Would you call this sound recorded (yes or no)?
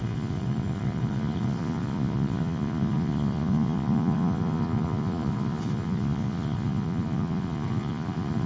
no